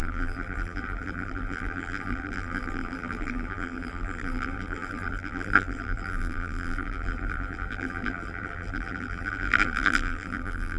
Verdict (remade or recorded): remade